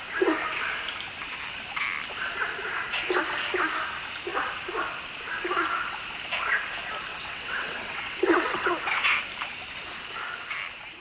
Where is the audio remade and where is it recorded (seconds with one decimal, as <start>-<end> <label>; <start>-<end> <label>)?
0.0-7.1 recorded; 7.1-8.7 remade; 8.7-11.0 recorded